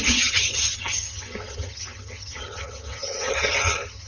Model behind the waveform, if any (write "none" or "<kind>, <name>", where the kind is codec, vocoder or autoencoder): vocoder, HiFi-GAN